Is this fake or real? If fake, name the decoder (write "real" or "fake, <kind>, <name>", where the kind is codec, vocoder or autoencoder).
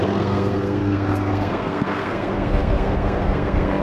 fake, codec, SNAC